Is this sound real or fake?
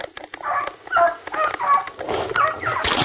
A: real